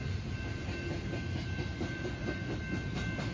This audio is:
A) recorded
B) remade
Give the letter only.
A